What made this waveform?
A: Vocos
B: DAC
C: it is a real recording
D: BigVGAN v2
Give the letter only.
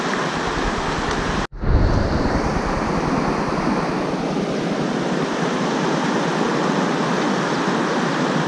C